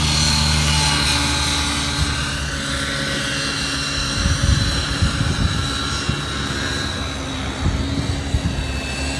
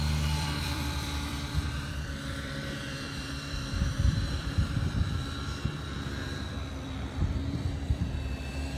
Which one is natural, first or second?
first